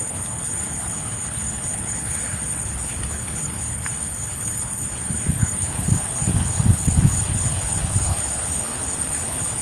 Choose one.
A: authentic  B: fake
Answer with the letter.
B